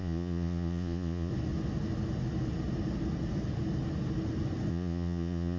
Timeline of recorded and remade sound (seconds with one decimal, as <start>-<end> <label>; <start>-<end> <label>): 0.0-1.3 remade; 1.3-4.7 recorded; 4.7-5.6 remade